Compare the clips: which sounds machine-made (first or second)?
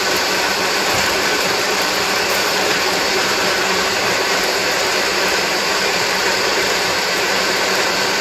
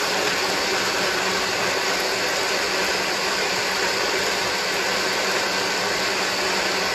first